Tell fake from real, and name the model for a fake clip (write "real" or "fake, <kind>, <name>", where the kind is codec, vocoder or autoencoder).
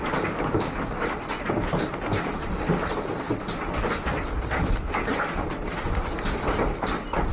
real